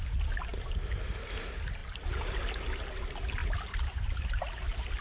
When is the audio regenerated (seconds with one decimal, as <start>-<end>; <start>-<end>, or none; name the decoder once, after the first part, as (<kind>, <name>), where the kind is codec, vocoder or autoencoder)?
3.4-4.4 (vocoder, BigVGAN v2)